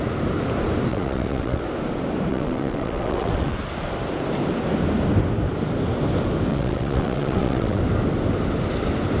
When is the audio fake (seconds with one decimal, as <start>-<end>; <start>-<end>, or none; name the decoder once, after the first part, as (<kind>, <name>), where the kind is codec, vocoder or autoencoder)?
0.9-1.6 (vocoder, WaveNeXt); 2.3-3.6; 6.5-7.8